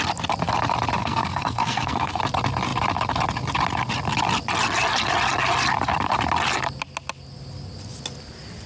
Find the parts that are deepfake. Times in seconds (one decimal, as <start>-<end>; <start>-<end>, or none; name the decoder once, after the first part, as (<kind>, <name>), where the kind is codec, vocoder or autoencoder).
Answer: 1.0-2.2 (codec, SNAC)